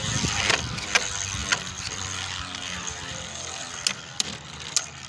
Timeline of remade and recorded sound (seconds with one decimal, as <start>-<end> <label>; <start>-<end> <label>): 0.0-5.1 recorded